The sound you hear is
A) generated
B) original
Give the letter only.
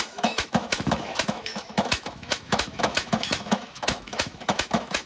A